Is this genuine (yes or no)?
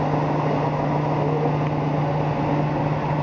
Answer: yes